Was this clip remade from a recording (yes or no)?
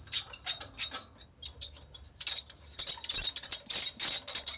no